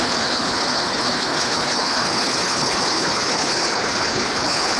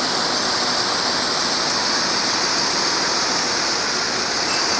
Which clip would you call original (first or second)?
second